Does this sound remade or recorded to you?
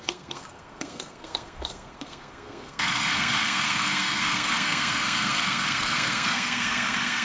remade